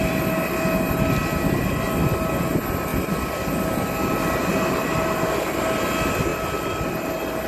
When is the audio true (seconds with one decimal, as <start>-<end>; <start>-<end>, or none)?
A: 0.0-7.5